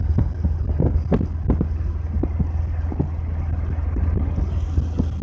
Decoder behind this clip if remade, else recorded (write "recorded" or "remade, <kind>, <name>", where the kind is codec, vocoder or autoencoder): recorded